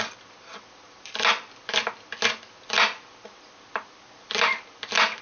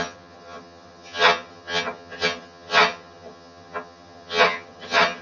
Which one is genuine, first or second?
first